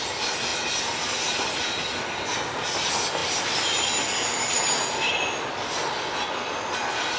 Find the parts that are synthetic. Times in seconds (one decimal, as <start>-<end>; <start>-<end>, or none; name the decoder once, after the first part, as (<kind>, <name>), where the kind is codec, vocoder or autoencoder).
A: none